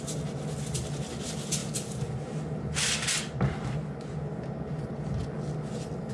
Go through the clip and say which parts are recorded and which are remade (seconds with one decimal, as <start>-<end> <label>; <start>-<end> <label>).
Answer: 0.0-6.1 recorded